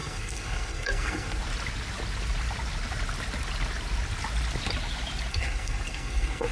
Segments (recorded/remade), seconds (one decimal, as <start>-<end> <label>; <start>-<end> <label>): 0.0-1.4 remade; 1.4-5.3 recorded; 5.3-6.5 remade